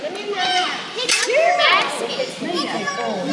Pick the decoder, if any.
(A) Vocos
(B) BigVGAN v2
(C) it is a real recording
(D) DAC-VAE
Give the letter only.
C